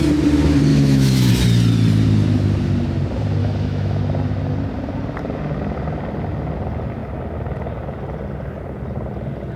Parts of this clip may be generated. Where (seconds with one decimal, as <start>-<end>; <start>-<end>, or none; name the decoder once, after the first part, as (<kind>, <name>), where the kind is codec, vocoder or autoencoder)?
0.7-1.3 (autoencoder, DAC-VAE); 3.4-4.0